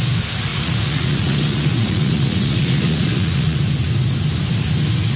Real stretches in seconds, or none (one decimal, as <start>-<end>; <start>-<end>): 0.0-0.5; 3.6-5.2